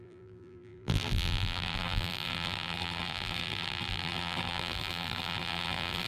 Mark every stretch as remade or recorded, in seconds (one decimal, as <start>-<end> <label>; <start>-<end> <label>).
0.0-6.1 remade